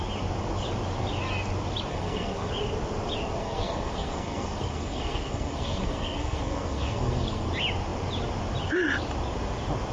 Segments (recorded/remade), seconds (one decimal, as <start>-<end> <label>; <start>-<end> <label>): 0.0-1.9 recorded; 1.9-2.5 remade; 2.5-3.4 recorded; 3.4-7.5 remade; 7.5-9.9 recorded